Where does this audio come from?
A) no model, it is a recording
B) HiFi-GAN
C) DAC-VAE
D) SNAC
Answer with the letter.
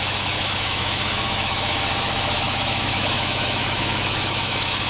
C